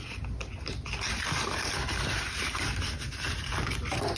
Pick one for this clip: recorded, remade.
recorded